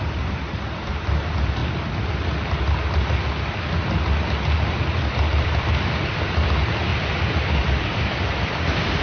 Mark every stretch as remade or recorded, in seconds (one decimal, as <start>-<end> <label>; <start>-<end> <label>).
0.0-1.6 remade; 1.6-5.1 recorded; 5.1-6.9 remade; 6.9-7.6 recorded; 7.6-9.0 remade

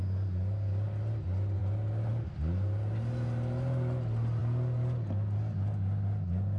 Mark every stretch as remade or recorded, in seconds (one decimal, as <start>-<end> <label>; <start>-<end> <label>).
0.0-6.6 recorded

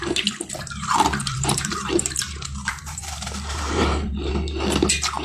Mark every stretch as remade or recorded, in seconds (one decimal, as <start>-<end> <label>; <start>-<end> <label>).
0.0-1.2 recorded; 1.2-4.3 remade; 4.3-5.2 recorded

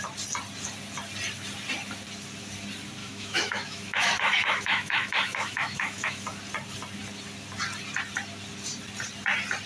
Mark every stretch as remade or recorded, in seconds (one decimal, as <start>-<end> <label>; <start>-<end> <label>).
0.0-3.0 recorded; 3.0-6.2 remade; 6.2-9.7 recorded

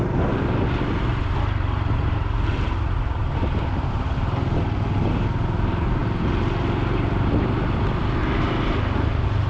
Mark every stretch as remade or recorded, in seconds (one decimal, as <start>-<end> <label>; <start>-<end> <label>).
0.0-9.5 recorded

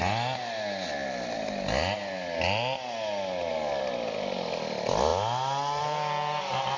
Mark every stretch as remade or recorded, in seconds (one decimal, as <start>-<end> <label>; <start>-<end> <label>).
0.0-6.8 recorded